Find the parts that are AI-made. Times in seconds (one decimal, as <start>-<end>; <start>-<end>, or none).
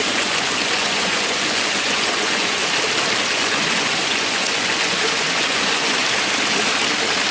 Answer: 0.0-2.6; 3.3-6.0